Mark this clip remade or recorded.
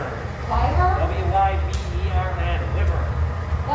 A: recorded